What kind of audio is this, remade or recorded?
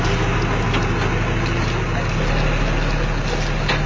recorded